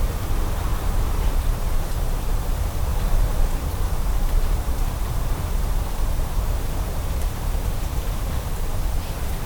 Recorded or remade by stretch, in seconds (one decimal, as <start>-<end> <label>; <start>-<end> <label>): 0.0-2.9 remade; 2.9-3.4 recorded; 3.4-9.5 remade